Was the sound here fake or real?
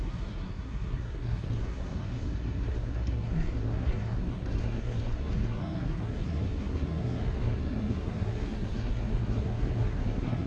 fake